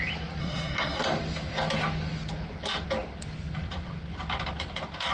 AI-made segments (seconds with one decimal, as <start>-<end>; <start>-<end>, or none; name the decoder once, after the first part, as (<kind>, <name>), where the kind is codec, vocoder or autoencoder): 0.4-1.0 (codec, SNAC)

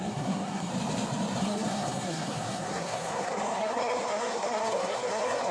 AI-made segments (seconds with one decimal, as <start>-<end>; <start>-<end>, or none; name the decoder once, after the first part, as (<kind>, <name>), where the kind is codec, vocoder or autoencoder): 0.0-0.7 (codec, SNAC); 1.4-5.5

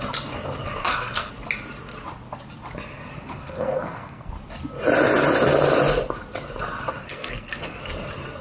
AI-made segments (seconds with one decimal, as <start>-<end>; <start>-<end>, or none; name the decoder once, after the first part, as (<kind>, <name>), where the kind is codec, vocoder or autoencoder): 0.8-1.3 (codec, SNAC); 3.1-4.3; 7.0-7.8

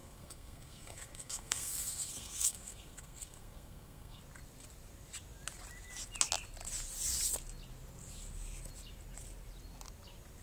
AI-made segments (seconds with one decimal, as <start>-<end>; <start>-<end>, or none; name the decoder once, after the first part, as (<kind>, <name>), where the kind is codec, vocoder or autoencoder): 0.0-4.2 (codec, SNAC)